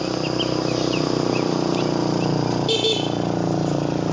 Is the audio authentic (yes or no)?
yes